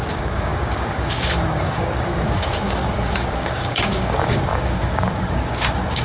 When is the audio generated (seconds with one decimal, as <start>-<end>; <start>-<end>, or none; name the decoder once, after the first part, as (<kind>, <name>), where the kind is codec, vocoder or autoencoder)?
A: 0.0-6.0 (codec, DAC)